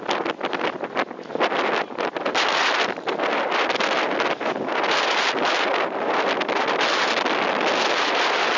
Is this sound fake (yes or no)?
no